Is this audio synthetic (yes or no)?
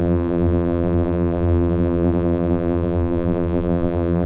yes